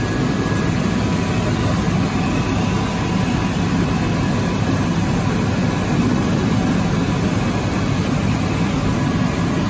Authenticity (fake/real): real